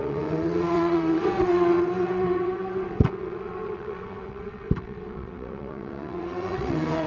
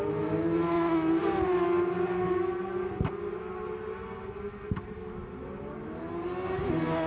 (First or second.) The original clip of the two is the second